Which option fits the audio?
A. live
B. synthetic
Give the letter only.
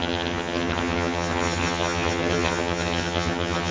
B